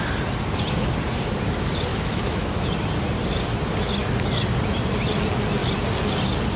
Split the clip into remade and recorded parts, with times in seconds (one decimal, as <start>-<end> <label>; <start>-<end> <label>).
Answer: 0.0-1.9 recorded; 1.9-2.7 remade; 2.7-6.6 recorded